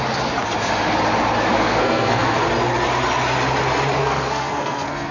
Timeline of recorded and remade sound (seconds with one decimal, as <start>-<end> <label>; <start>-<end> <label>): 0.0-1.5 recorded; 1.5-2.4 remade; 2.4-4.0 recorded; 4.0-5.1 remade